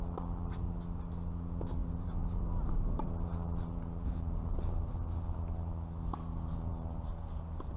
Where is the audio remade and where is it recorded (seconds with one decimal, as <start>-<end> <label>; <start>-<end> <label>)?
0.0-1.8 recorded; 1.8-4.9 remade; 4.9-6.7 recorded; 6.7-7.8 remade

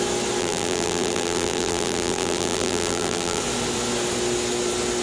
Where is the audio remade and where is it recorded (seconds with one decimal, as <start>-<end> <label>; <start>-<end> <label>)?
0.0-0.4 recorded; 0.4-3.4 remade; 3.4-5.0 recorded

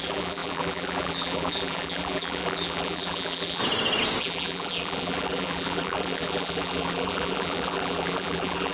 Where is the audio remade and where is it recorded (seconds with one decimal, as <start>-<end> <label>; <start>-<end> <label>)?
0.0-3.6 remade; 3.6-4.2 recorded; 4.2-8.7 remade

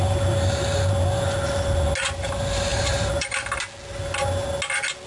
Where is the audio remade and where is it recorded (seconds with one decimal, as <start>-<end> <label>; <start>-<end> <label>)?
0.0-2.7 recorded; 2.7-3.6 remade; 3.6-5.1 recorded

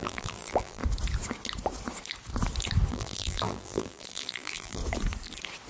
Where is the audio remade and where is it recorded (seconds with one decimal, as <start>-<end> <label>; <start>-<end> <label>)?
0.0-0.8 remade; 0.8-2.9 recorded; 2.9-4.8 remade; 4.8-5.7 recorded